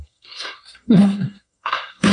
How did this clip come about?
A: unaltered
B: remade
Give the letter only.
B